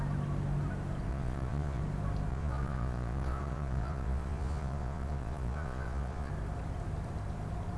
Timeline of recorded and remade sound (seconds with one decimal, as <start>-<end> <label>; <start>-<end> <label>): 0.0-1.1 recorded; 1.1-1.8 remade; 1.8-2.3 recorded; 2.3-6.3 remade; 6.3-7.8 recorded